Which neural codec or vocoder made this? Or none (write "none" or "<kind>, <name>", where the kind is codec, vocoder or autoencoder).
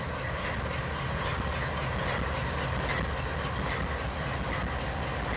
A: none